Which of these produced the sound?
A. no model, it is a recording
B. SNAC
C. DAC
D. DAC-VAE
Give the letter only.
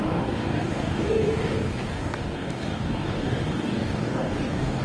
C